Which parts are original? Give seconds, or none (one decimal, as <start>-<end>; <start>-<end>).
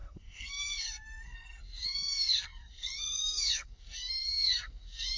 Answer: none